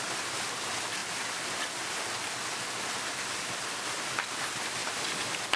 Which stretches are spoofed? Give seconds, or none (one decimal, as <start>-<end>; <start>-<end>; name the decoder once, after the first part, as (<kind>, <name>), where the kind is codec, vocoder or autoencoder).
none